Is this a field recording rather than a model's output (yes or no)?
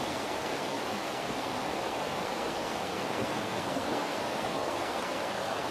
no